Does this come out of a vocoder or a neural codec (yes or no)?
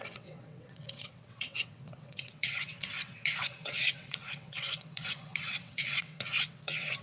yes